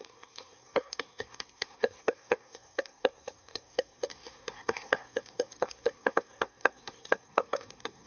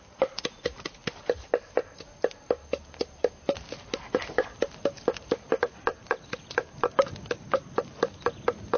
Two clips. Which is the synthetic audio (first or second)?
first